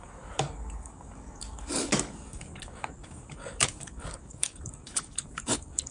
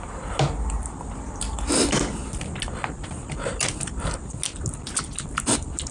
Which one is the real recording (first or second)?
second